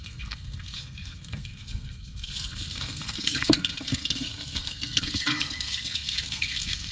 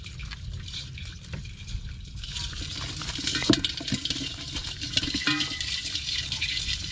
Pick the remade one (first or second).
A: first